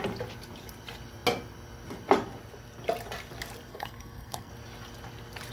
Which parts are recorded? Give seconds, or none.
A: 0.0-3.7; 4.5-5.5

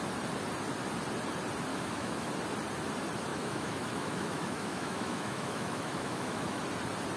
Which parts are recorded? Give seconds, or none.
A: 0.0-1.7; 2.3-3.3; 6.6-7.2

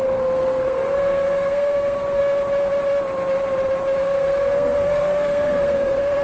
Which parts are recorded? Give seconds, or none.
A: 2.2-4.0

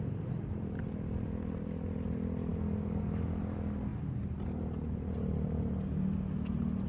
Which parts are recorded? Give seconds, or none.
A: 0.0-2.5; 3.4-6.9

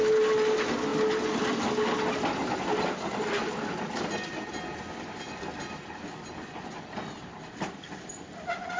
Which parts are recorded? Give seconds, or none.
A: 0.0-8.8

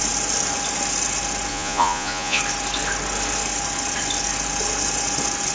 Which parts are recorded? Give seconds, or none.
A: 0.0-1.5; 2.4-5.5